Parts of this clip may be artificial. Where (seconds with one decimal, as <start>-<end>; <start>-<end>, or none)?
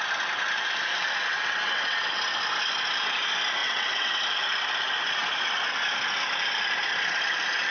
1.3-2.2; 3.6-4.2